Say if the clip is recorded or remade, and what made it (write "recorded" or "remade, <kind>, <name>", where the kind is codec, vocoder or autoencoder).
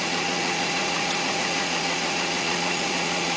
remade, vocoder, Vocos